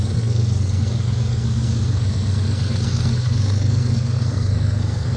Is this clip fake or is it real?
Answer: fake